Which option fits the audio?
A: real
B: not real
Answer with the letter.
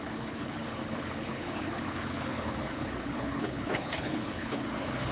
B